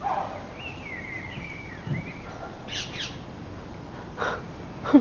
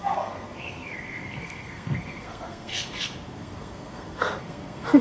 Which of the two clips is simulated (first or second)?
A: second